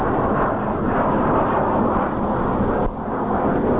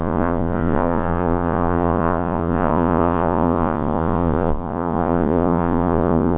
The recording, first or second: first